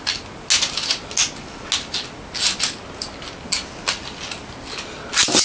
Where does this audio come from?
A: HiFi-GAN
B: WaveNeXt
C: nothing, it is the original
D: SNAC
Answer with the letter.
C